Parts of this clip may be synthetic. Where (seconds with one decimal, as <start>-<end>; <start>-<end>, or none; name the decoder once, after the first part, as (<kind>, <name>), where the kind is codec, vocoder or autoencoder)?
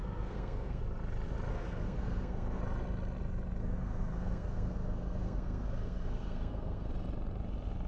0.0-0.8 (codec, SNAC); 1.5-2.6; 3.6-6.9